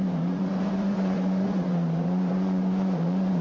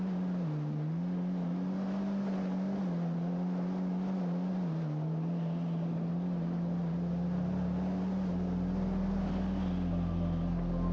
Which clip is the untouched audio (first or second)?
second